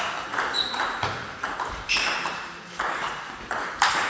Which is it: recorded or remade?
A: remade